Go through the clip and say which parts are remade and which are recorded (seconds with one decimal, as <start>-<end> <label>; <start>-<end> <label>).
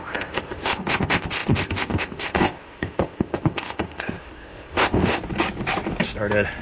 0.0-5.2 remade; 5.2-6.6 recorded